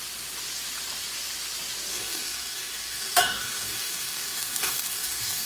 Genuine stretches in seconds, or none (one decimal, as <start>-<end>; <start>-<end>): 0.0-1.9